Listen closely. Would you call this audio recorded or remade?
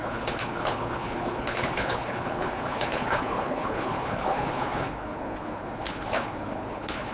remade